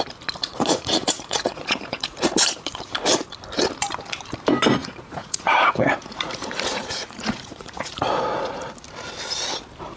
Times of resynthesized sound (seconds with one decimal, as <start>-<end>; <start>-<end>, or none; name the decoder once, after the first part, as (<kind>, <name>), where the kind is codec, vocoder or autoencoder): 0.4-2.7 (vocoder, Vocos); 4.8-8.7